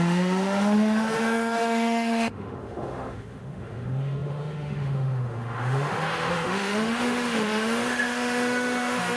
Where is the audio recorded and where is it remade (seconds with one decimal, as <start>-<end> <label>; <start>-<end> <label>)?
0.0-9.2 remade